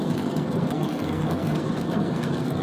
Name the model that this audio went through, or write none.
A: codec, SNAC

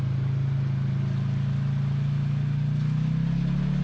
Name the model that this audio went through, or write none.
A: none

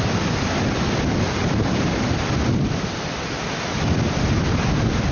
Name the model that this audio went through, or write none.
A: none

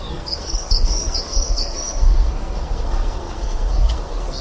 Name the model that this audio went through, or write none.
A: codec, SNAC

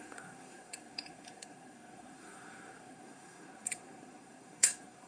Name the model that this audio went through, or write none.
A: codec, SNAC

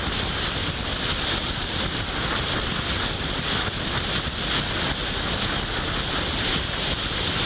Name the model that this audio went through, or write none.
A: none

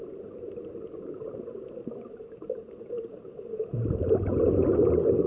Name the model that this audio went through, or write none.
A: none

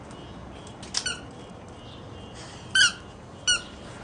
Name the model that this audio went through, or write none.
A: none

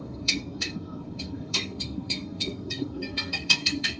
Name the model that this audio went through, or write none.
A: codec, SNAC